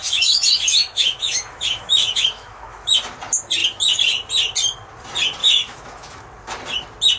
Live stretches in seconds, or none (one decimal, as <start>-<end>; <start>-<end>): 2.9-5.4; 6.2-7.2